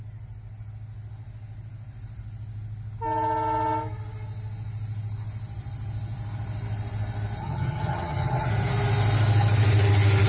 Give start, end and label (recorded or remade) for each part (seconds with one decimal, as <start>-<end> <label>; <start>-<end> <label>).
0.0-7.4 recorded; 7.4-8.5 remade; 8.5-10.3 recorded